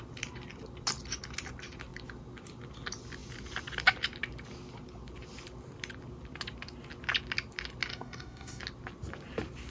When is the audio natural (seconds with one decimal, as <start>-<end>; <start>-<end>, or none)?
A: 0.0-7.9; 8.6-9.7